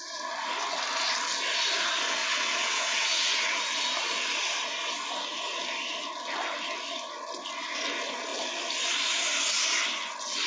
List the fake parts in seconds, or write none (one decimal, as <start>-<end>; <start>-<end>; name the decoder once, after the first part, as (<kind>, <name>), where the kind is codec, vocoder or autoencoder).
2.2-3.6 (vocoder, WaveNeXt)